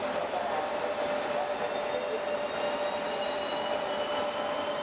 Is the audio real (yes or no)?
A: yes